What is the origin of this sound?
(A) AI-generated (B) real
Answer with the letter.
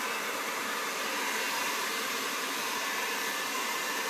A